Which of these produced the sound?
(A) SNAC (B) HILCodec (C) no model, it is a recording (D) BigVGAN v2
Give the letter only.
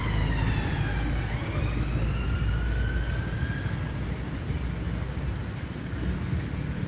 C